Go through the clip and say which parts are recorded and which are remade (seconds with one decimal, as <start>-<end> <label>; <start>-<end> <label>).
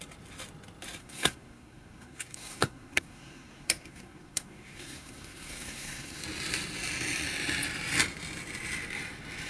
0.0-1.0 recorded; 1.0-6.2 remade; 6.2-9.5 recorded